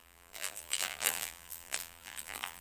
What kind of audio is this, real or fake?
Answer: fake